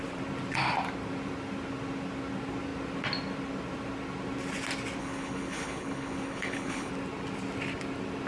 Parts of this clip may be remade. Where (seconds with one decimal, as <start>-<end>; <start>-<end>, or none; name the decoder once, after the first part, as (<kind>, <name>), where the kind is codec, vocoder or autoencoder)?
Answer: 5.0-6.9 (codec, HILCodec)